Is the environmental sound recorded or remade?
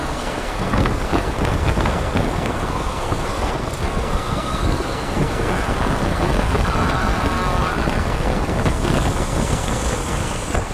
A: remade